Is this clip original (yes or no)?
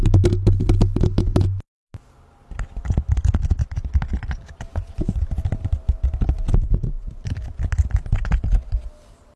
yes